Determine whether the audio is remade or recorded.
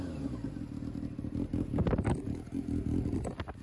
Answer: recorded